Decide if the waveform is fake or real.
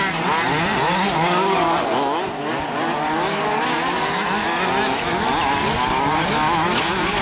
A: real